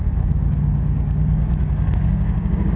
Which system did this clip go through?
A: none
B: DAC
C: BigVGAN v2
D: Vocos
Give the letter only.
B